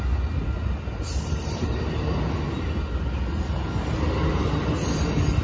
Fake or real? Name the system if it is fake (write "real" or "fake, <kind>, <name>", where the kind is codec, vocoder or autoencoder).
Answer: real